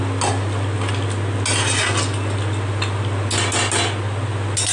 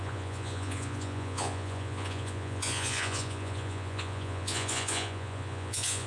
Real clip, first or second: first